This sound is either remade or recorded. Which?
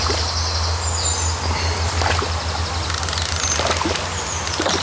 recorded